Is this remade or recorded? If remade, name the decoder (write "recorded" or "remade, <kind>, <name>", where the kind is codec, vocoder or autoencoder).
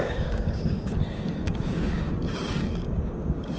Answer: remade, codec, DAC